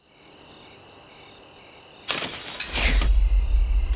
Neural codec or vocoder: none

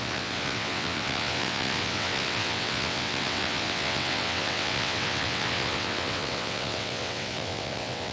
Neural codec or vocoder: vocoder, WaveNeXt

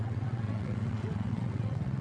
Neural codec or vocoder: vocoder, WaveNeXt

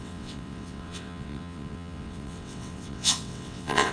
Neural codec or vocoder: vocoder, WaveNeXt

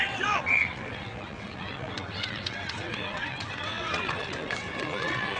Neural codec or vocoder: vocoder, WaveNeXt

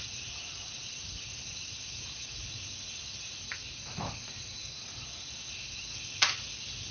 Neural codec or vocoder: none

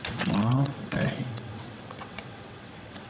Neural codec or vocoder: vocoder, WaveNeXt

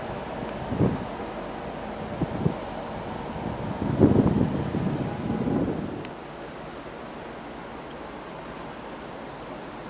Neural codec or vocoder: none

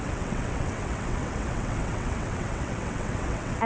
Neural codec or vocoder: vocoder, WaveNeXt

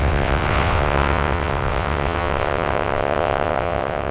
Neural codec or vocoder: vocoder, WaveNeXt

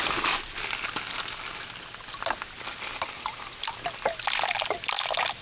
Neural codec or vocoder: none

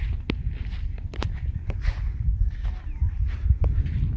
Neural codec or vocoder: none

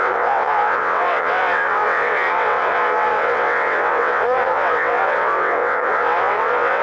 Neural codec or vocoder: vocoder, WaveNeXt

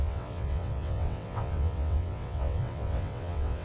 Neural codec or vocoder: vocoder, WaveNeXt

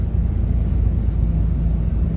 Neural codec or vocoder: none